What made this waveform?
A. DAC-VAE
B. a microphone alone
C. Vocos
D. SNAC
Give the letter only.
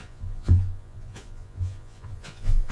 C